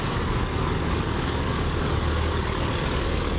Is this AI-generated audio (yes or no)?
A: yes